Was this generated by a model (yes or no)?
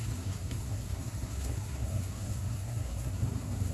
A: yes